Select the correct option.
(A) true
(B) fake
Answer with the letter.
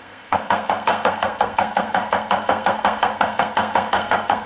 B